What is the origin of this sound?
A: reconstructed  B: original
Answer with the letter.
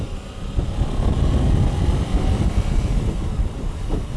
B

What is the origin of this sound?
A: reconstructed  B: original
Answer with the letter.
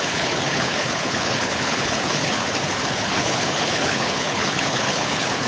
A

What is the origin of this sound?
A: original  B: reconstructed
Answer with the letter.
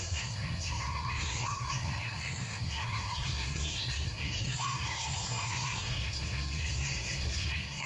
B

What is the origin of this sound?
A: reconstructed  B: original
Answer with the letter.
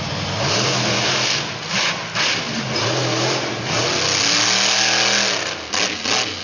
B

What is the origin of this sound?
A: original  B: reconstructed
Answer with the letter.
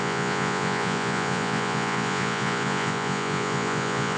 B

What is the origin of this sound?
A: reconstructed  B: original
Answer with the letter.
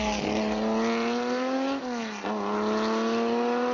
B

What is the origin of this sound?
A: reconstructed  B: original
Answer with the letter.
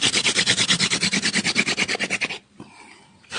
B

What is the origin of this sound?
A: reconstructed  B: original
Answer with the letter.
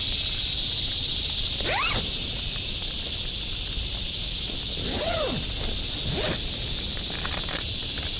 B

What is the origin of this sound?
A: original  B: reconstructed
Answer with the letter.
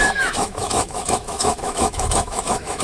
B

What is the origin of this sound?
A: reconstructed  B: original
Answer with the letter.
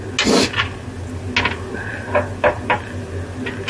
B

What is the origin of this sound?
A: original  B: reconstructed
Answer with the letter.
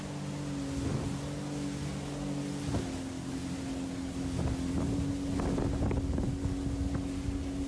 A